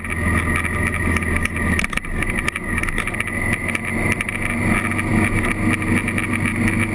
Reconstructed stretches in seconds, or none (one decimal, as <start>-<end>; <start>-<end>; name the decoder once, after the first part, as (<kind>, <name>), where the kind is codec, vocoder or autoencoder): none